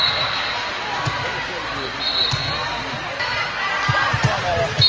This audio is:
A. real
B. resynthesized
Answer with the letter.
A